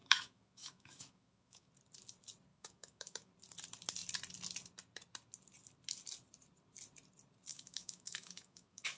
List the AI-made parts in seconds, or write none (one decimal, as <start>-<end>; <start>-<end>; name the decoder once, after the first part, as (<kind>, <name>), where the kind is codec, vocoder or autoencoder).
0.0-1.7 (autoencoder, DAC-VAE); 2.5-3.3; 7.5-9.0